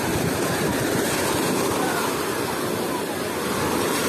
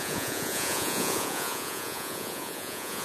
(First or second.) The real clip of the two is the first